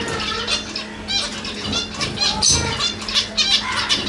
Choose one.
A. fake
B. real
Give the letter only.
B